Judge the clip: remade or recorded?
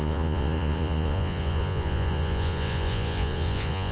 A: remade